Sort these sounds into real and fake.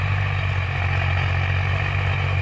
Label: real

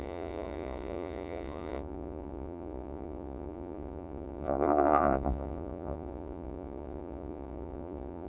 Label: fake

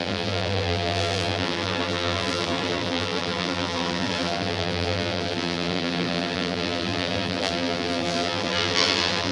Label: fake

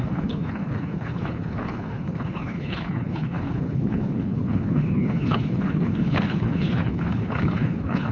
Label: fake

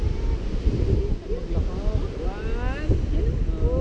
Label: real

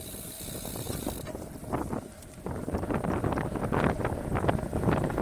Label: real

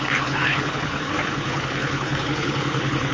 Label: fake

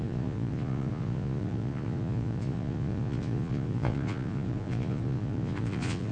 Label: fake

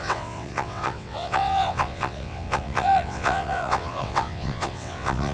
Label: fake